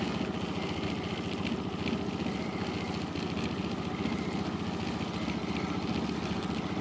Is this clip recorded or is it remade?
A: recorded